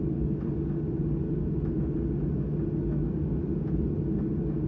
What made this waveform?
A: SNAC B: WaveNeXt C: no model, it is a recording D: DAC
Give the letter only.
C